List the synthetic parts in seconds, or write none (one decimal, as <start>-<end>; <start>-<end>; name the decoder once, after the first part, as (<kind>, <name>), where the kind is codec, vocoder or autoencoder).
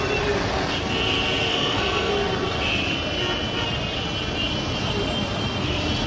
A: 1.5-2.1 (codec, SNAC)